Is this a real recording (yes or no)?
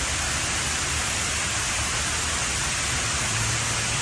yes